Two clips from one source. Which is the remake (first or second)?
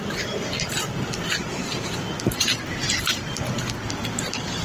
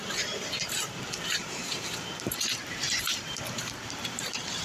second